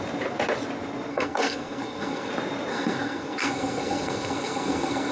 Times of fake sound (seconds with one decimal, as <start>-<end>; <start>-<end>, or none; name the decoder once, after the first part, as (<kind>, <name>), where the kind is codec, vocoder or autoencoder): 1.1-2.3 (codec, SNAC); 2.7-5.1